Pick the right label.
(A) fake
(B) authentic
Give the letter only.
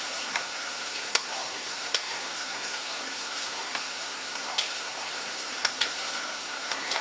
A